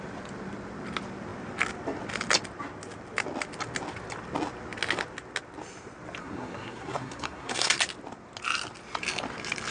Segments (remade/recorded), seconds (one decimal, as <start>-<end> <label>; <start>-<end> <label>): 0.0-6.2 recorded; 6.2-7.8 remade; 7.8-9.7 recorded